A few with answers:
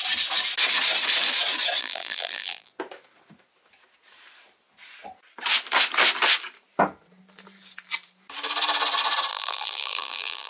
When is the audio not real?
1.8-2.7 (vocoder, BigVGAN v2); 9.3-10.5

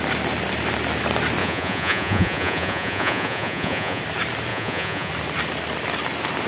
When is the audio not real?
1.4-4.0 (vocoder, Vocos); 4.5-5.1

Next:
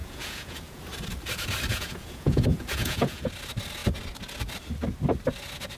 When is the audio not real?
0.0-0.8 (vocoder, Vocos); 1.7-3.3

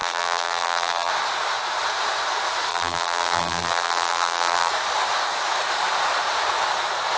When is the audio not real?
0.0-1.1 (vocoder, BigVGAN v2); 2.7-4.7